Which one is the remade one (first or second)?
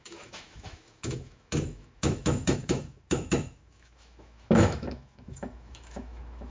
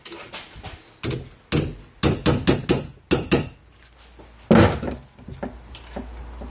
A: first